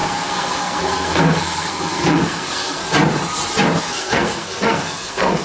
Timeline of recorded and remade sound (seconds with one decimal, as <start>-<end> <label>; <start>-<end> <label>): 0.0-2.8 remade; 2.8-3.8 recorded; 3.8-5.4 remade

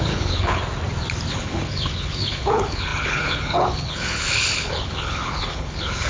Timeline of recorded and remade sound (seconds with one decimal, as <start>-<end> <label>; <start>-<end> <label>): 0.0-0.6 remade; 0.6-1.3 recorded; 1.3-6.1 remade

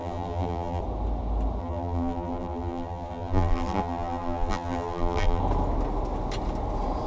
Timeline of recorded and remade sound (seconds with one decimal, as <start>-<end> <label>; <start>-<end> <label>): 0.0-0.8 remade; 0.8-1.6 recorded; 1.6-5.4 remade; 5.4-7.1 recorded

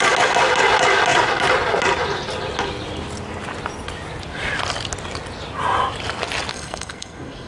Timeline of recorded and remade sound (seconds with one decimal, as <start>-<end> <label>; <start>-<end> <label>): 0.0-6.5 recorded; 6.5-7.5 remade

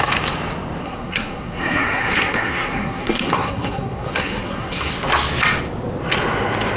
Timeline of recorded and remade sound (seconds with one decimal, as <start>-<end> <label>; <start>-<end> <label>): 0.0-0.8 recorded; 0.8-4.9 remade; 4.9-6.8 recorded

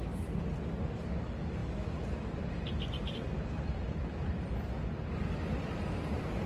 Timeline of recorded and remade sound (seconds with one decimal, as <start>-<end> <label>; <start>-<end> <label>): 0.0-6.5 recorded